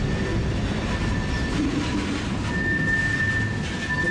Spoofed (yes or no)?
no